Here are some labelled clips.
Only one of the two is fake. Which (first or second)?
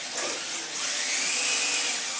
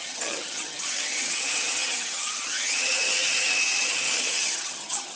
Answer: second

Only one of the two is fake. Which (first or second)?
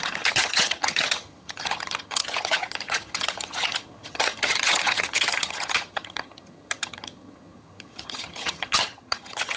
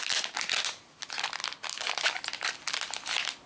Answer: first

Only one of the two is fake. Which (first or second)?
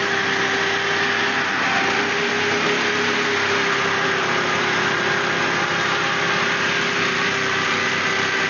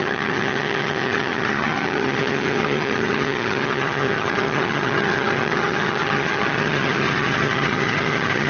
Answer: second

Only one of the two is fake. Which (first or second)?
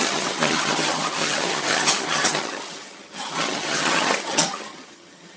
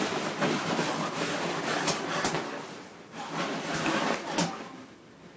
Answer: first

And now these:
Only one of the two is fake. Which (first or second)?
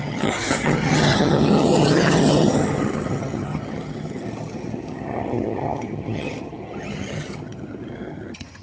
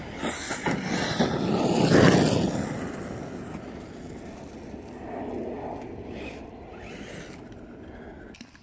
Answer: first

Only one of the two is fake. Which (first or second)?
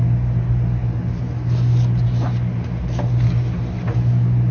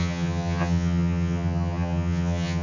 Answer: second